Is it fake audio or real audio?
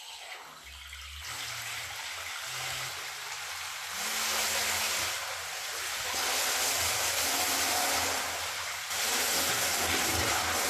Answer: real